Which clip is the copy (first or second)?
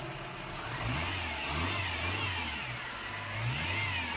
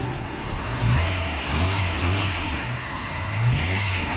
second